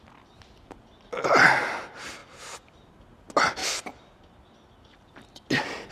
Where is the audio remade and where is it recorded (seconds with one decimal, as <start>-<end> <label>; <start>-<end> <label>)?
0.0-5.9 recorded